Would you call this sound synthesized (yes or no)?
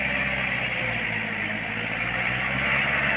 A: no